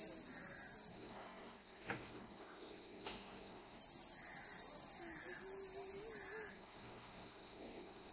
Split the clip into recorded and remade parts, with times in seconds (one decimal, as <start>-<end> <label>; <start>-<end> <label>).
0.0-0.9 recorded; 0.9-3.8 remade; 3.8-6.5 recorded; 6.5-8.1 remade